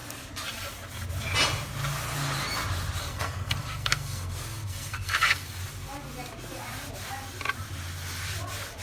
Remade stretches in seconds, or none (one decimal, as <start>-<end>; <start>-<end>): 3.0-5.6